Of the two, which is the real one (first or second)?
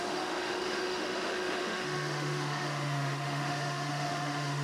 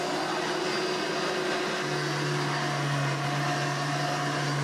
second